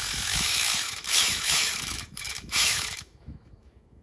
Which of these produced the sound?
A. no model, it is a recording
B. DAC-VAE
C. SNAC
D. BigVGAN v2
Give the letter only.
B